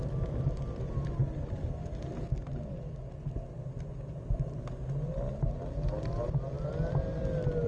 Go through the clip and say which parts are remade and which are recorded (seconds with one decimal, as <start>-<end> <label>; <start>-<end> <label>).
0.0-7.7 recorded